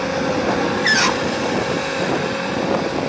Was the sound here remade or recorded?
remade